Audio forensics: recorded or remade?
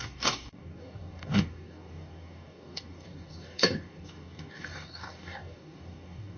remade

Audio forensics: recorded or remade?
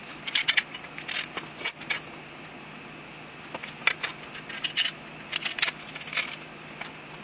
recorded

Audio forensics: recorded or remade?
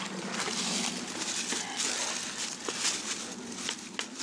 recorded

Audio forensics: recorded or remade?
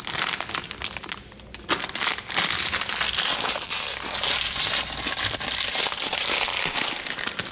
recorded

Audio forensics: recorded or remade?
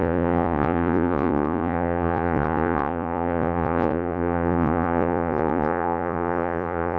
remade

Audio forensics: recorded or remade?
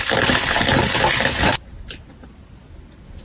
recorded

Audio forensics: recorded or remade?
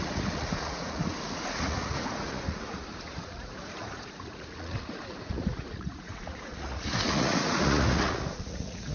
remade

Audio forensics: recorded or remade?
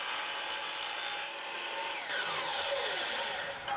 recorded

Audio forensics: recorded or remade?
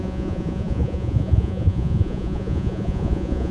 remade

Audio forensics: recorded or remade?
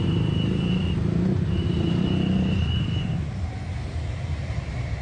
remade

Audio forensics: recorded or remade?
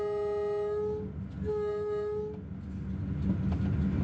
recorded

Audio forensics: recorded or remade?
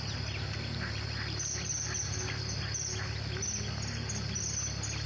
recorded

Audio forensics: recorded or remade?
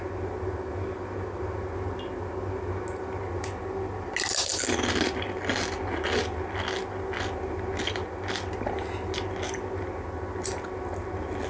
recorded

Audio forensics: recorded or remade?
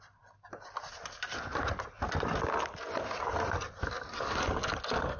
recorded